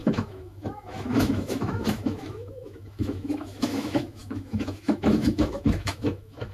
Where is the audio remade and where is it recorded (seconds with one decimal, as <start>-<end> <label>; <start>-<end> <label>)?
0.0-6.5 remade